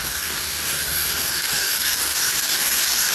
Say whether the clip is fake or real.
fake